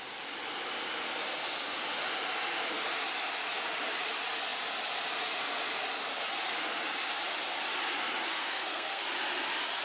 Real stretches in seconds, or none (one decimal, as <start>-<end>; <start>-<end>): 0.0-8.4; 9.0-9.8